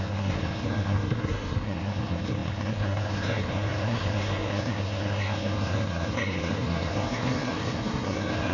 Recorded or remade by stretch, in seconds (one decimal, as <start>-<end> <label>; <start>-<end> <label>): 0.0-8.5 remade

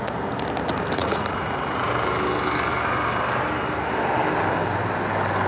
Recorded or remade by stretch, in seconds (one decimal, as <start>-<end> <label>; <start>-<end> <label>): 0.0-1.0 recorded; 1.0-1.9 remade; 1.9-5.5 recorded